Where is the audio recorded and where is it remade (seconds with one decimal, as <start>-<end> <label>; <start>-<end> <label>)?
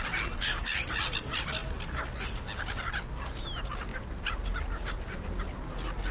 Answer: 0.0-6.1 recorded